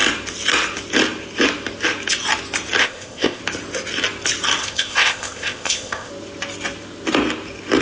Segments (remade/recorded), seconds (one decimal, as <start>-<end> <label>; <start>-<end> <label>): 0.0-2.8 recorded; 2.8-3.4 remade; 3.4-4.6 recorded; 4.6-6.1 remade; 6.1-7.8 recorded